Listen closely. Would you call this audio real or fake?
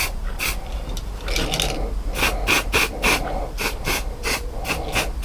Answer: real